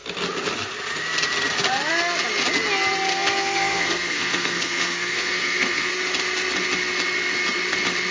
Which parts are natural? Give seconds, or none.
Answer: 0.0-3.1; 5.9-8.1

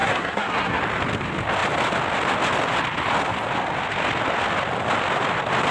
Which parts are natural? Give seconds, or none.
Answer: 0.8-5.7

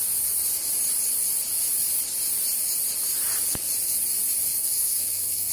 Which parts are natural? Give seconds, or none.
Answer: 0.0-4.6

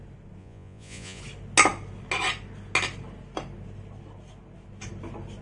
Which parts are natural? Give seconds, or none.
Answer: 0.0-0.4; 1.2-5.4

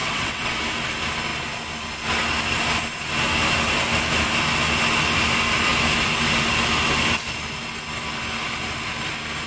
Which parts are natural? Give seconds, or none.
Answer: 0.6-9.5